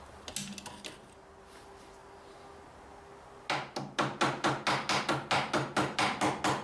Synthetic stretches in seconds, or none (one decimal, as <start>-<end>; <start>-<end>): none